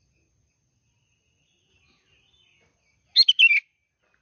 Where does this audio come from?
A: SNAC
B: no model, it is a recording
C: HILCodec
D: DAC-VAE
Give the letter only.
B